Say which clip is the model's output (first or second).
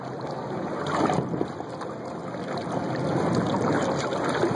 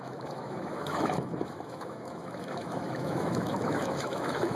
second